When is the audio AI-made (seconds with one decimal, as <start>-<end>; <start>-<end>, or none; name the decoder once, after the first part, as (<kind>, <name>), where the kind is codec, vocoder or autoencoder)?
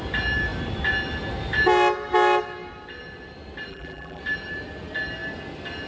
3.7-4.2 (vocoder, BigVGAN v2)